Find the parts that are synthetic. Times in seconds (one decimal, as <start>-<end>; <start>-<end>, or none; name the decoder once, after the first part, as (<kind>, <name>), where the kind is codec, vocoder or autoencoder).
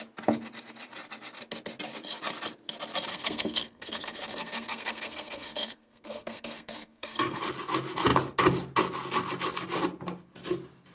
3.1-7.4 (codec, SNAC)